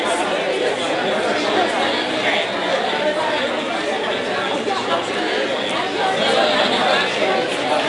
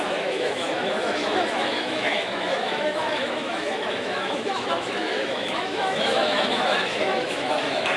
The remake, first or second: second